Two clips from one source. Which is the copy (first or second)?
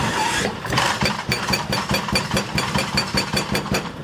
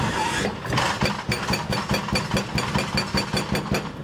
first